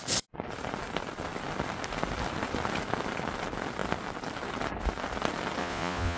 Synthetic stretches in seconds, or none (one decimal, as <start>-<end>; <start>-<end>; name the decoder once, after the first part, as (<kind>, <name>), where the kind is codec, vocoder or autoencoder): 5.6-6.2 (vocoder, Vocos)